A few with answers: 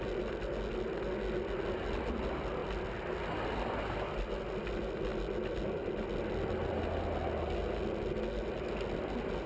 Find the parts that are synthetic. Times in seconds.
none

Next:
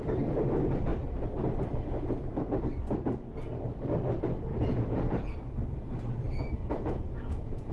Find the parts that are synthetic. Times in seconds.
4.5-5.3 (vocoder, Vocos); 6.6-7.7